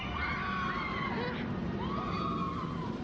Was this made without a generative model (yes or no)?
yes